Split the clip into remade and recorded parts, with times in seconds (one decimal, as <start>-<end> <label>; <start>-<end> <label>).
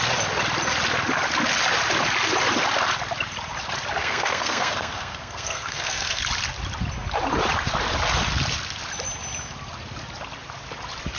0.0-4.0 recorded; 4.0-6.2 remade; 6.2-11.2 recorded